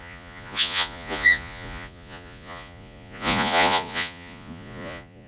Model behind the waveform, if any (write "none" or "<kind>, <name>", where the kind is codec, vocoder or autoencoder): vocoder, Vocos